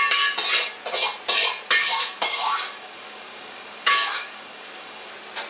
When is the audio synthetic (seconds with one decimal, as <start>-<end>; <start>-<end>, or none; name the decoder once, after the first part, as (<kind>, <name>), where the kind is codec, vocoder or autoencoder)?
1.8-5.1 (codec, DAC)